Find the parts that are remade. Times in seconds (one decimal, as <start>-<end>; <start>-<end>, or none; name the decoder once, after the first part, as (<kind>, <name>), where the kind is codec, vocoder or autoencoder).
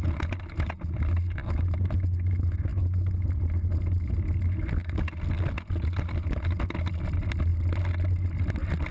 none